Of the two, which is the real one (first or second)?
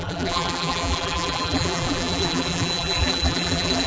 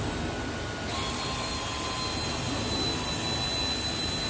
second